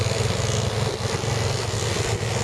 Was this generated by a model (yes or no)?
no